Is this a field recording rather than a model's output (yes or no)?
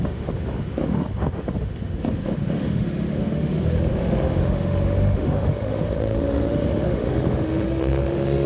no